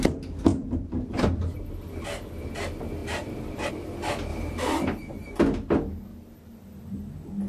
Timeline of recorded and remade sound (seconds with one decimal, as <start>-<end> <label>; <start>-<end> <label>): 0.0-0.5 recorded; 0.5-1.2 remade; 1.2-3.0 recorded; 3.0-3.7 remade; 3.7-4.3 recorded; 4.3-5.4 remade; 5.4-6.1 recorded; 6.1-7.5 remade